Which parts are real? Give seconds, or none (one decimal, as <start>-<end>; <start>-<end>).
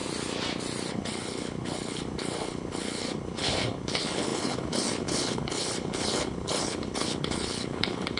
0.0-0.9